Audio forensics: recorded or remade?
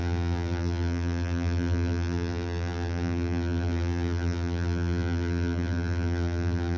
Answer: remade